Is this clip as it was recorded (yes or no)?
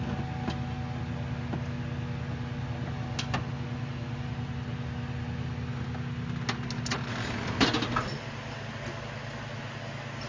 yes